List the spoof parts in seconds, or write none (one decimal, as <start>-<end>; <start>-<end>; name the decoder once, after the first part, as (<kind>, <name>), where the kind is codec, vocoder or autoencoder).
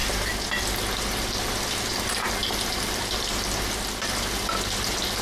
1.9-2.4 (vocoder, BigVGAN v2)